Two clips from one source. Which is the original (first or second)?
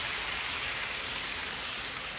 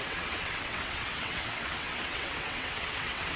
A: first